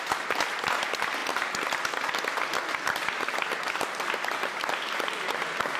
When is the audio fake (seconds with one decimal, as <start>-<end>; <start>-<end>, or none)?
none